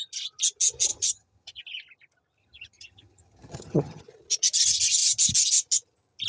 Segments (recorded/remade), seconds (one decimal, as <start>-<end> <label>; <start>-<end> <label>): 0.0-0.9 recorded; 0.9-1.6 remade; 1.6-2.4 recorded; 2.4-4.0 remade; 4.0-6.3 recorded